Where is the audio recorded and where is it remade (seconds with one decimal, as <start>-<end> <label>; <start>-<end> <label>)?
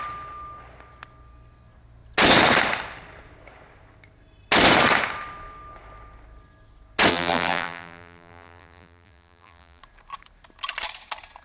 0.0-7.1 recorded; 7.1-9.8 remade; 9.8-11.4 recorded